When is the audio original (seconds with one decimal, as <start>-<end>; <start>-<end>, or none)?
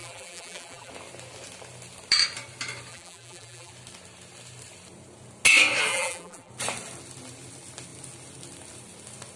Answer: 0.9-2.9; 3.7-5.9; 6.5-9.4